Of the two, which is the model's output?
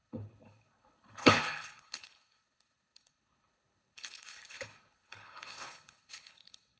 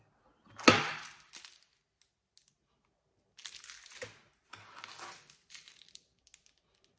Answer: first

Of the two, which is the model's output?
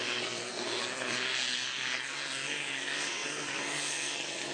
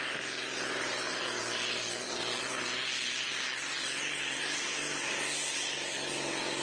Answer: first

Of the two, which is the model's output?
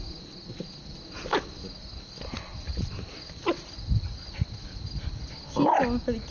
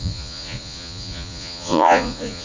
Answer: second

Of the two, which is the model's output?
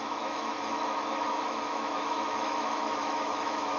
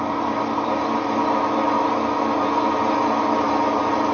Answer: first